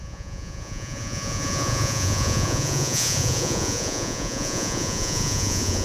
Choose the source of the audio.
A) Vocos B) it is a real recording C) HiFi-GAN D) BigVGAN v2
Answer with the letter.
A